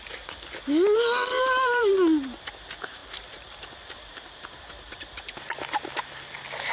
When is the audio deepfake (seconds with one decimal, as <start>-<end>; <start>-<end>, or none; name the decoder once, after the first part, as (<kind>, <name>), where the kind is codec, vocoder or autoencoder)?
1.3-1.9 (vocoder, BigVGAN v2); 3.0-4.9